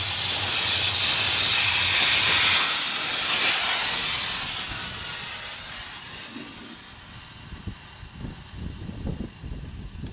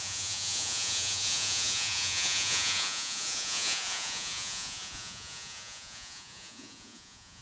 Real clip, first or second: first